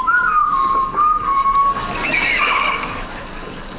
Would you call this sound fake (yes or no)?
yes